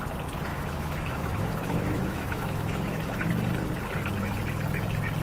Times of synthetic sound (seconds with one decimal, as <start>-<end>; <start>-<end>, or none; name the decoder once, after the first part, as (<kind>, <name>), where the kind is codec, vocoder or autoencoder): 0.5-3.3 (autoencoder, DAC-VAE)